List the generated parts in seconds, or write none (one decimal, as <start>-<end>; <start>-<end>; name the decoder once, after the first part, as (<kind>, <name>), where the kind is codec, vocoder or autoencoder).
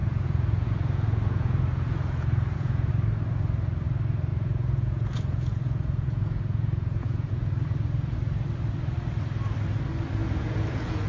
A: 0.0-2.9 (vocoder, Vocos); 4.3-7.5; 10.2-11.1